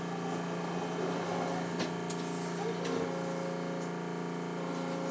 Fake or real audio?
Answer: real